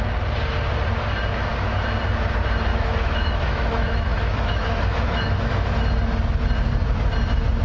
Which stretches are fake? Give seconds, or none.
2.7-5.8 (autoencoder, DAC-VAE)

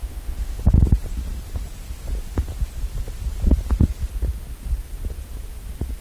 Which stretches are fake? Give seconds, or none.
0.0-0.6 (autoencoder, DAC-VAE)

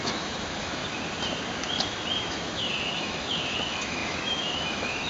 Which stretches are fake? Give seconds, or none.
0.0-0.8 (autoencoder, DAC-VAE); 2.2-5.1

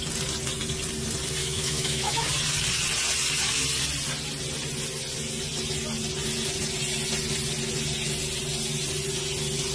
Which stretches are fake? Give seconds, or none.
1.4-2.3 (autoencoder, DAC-VAE)

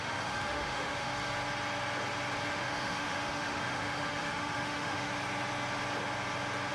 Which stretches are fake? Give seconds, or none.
0.0-1.1 (autoencoder, DAC-VAE); 2.5-5.1

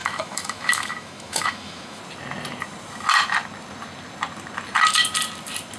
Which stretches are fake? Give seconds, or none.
0.0-2.0 (autoencoder, DAC-VAE)